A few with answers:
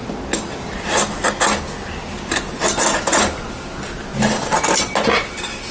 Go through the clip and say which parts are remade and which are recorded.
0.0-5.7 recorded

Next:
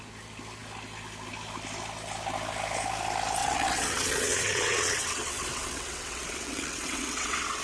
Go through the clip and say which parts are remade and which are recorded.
0.0-3.4 recorded; 3.4-7.6 remade

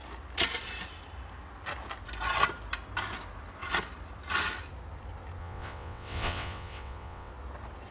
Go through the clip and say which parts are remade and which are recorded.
0.0-5.4 recorded; 5.4-7.3 remade; 7.3-7.9 recorded

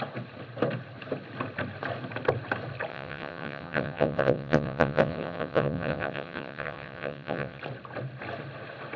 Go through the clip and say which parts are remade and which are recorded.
0.0-2.9 recorded; 2.9-7.6 remade; 7.6-9.0 recorded

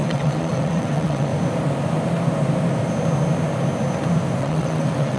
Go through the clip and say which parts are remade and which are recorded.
0.0-1.3 remade; 1.3-4.4 recorded; 4.4-5.2 remade

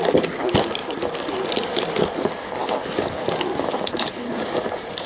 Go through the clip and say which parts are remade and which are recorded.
0.0-5.1 recorded

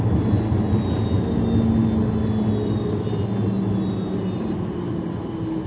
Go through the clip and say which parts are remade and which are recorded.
0.0-5.7 recorded